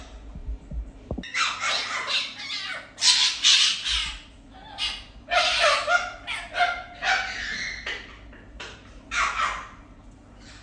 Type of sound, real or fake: real